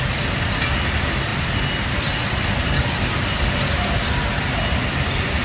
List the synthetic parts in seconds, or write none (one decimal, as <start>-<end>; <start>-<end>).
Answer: none